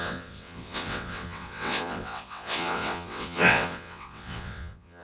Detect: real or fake fake